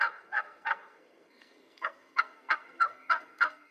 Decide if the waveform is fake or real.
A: fake